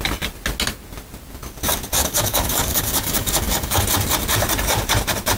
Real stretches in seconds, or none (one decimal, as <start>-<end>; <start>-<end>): 0.0-2.0; 3.8-5.4